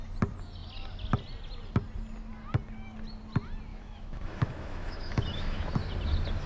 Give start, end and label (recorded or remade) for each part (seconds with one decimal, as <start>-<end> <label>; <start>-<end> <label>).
0.0-3.7 recorded; 3.7-5.7 remade; 5.7-6.5 recorded